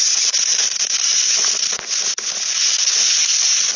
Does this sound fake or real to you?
real